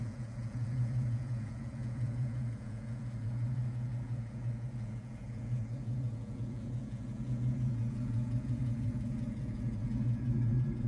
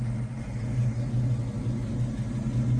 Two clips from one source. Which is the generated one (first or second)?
first